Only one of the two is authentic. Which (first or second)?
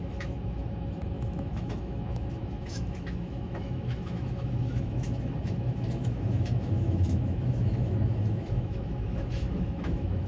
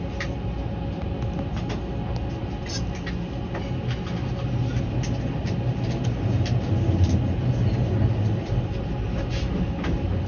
second